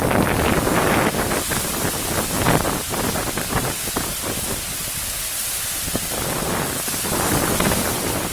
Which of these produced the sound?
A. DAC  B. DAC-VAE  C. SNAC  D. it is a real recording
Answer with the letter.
D